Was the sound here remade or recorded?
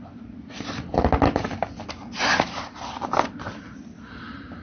recorded